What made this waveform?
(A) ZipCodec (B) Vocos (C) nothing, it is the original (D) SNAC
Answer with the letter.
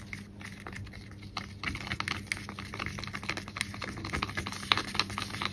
C